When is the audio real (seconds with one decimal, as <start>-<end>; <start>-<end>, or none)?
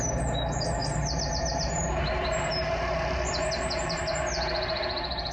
0.0-0.8; 4.0-5.3